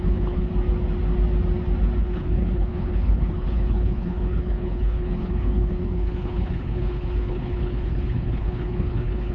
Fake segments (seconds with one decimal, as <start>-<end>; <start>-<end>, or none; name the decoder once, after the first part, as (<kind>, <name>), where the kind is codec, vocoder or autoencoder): 0.0-0.5 (codec, HILCodec); 2.0-9.3